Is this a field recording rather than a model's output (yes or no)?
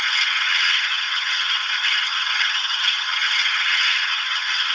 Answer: no